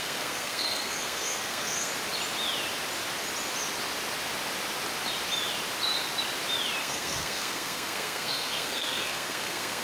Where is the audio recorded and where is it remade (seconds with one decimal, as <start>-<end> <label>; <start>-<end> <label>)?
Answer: 0.0-1.9 remade; 1.9-6.8 recorded; 6.8-9.8 remade